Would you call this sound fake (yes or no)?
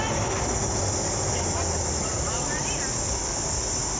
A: no